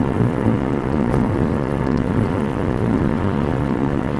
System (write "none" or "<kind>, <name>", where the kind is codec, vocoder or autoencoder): vocoder, Vocos